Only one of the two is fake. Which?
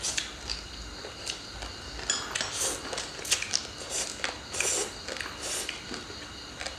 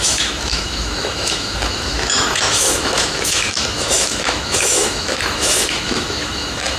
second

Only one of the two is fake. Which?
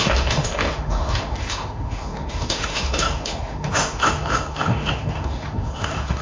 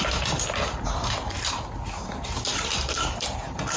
first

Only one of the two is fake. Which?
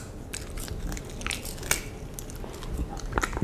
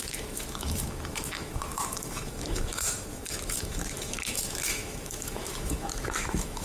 second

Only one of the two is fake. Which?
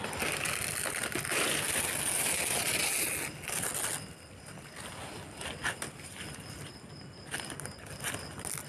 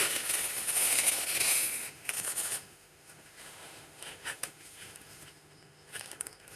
second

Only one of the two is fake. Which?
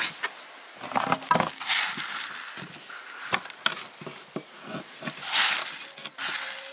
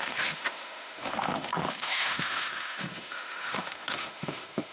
second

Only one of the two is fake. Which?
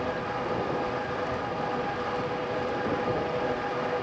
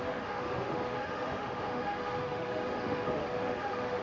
second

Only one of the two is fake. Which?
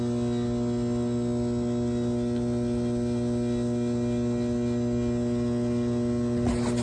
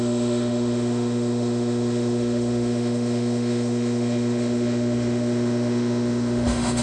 second